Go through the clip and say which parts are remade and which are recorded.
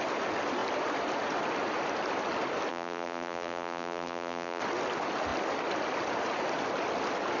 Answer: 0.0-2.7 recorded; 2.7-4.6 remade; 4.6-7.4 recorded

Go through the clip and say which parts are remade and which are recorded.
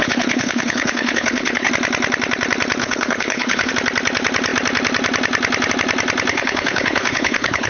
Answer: 0.0-1.7 remade; 1.7-2.8 recorded; 2.8-3.7 remade; 3.7-6.3 recorded; 6.3-7.7 remade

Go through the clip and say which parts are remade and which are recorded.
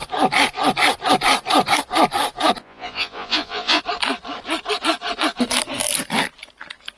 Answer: 0.0-2.6 recorded; 2.6-3.8 remade; 3.8-7.0 recorded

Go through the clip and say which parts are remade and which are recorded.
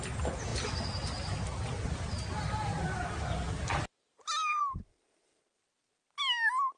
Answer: 0.0-6.8 recorded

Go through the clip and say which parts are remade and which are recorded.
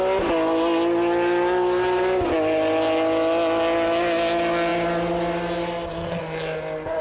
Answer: 0.0-7.0 recorded